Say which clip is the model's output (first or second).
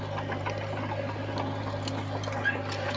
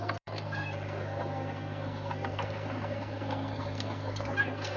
second